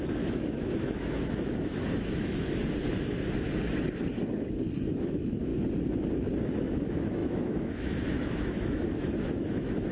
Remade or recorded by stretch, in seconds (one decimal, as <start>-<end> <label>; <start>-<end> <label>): 0.0-2.6 remade; 2.6-4.9 recorded; 4.9-5.5 remade; 5.5-6.6 recorded; 6.6-9.9 remade